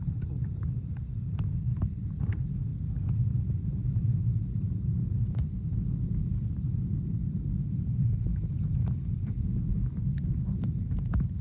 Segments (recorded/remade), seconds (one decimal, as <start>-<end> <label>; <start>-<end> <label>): 0.0-1.5 recorded; 1.5-2.2 remade; 2.2-4.5 recorded; 4.5-5.8 remade; 5.8-11.4 recorded